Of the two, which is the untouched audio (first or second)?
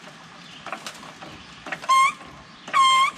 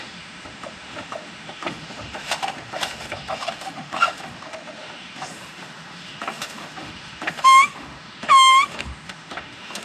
first